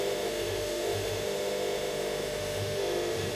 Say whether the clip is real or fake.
fake